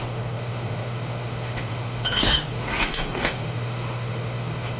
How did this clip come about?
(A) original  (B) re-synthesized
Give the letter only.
B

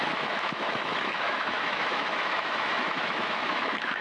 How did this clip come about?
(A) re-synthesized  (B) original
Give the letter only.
A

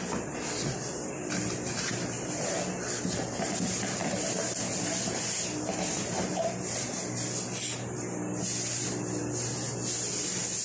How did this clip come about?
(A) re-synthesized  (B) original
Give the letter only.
B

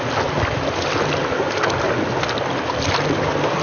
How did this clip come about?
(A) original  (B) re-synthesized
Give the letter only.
A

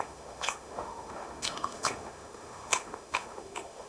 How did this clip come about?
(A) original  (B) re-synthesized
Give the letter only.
B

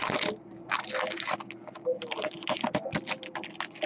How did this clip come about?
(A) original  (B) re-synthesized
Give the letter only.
A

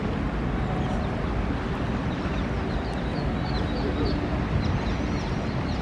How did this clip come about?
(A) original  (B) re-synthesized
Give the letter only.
A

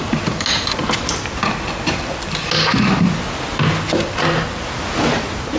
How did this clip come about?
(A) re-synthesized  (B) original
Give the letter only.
B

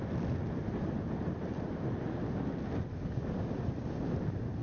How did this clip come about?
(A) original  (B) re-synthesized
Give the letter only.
A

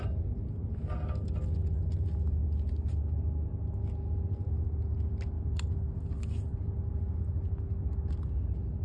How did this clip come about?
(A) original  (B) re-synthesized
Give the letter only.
A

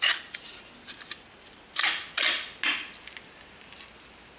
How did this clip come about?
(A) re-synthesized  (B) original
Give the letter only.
B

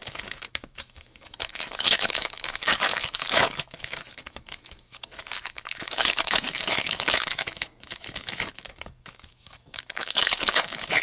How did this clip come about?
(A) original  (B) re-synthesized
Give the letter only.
B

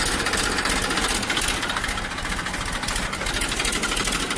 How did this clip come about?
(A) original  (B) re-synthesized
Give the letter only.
A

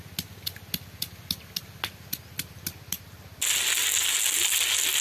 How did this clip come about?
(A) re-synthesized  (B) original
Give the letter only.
B